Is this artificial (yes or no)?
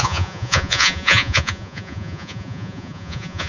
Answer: yes